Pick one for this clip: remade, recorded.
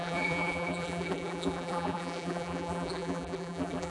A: remade